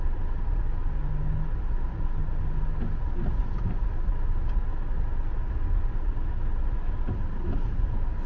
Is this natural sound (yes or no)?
yes